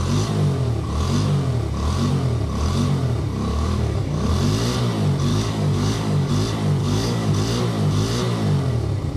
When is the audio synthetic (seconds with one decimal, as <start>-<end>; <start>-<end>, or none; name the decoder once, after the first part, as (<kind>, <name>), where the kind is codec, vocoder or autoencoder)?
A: 3.5-4.3 (codec, DAC); 5.3-6.3; 6.8-7.3

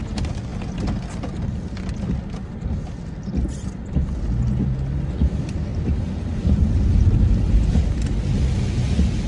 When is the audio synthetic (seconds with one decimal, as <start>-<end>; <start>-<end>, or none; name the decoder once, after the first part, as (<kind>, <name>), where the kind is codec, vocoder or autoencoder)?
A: none

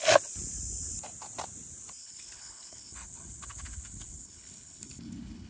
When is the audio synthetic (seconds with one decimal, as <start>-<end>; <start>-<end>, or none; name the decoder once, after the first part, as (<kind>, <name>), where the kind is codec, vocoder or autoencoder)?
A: 2.0-5.5 (codec, HILCodec)

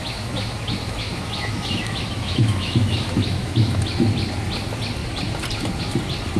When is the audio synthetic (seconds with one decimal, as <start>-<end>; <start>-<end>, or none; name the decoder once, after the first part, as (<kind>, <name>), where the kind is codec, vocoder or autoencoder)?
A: 0.0-3.8 (autoencoder, DAC-VAE)

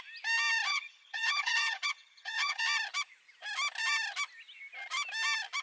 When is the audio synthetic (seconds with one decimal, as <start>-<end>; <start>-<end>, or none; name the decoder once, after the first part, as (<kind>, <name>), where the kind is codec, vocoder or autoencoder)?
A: 0.7-2.6 (vocoder, HiFi-GAN)

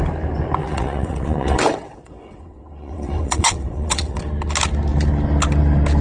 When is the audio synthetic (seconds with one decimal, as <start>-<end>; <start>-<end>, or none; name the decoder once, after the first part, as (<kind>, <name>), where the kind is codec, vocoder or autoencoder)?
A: 0.6-4.2 (vocoder, WaveNeXt)

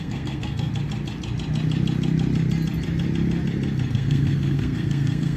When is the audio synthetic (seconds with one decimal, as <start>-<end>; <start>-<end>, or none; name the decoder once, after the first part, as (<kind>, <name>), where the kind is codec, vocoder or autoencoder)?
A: 0.0-0.7 (codec, SNAC); 3.9-5.4